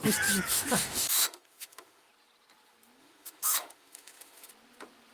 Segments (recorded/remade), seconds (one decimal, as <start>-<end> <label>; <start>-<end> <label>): 0.0-0.5 recorded; 0.5-2.1 remade; 2.1-3.0 recorded; 3.0-4.5 remade; 4.5-5.1 recorded